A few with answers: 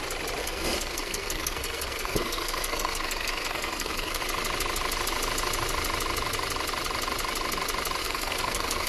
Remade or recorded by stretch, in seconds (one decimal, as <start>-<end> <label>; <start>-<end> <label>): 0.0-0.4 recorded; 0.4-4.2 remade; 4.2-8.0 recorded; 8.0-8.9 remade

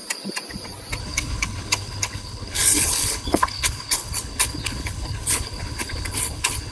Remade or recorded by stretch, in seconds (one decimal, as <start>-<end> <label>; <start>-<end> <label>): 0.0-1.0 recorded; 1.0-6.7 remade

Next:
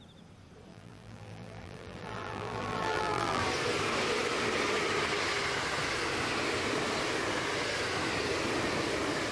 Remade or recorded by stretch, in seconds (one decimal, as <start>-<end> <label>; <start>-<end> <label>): 0.0-0.7 recorded; 0.7-3.4 remade; 3.4-9.3 recorded